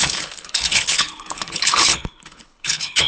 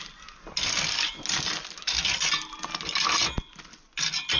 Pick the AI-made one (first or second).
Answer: first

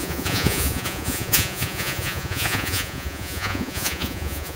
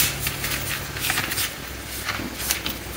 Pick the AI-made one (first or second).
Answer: first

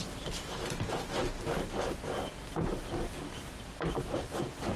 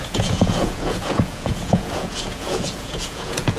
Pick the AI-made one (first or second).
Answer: second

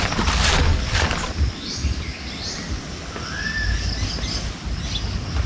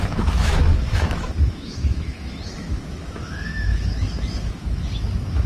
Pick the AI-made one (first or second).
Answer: second